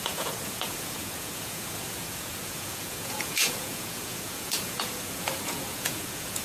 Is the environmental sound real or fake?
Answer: fake